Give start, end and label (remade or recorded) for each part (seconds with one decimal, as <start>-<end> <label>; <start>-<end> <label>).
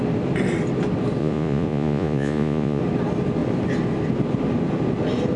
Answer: 0.0-1.2 recorded; 1.2-2.8 remade; 2.8-5.4 recorded